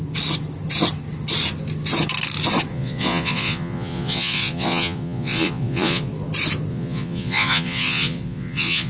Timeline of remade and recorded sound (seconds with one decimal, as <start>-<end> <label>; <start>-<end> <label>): 0.0-2.7 recorded; 2.7-6.1 remade; 6.1-6.7 recorded; 6.7-8.9 remade